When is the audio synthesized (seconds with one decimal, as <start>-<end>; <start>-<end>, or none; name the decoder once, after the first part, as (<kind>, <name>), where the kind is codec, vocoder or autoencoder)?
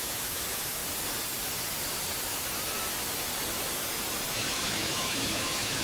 0.0-0.8 (autoencoder, DAC-VAE); 4.3-5.8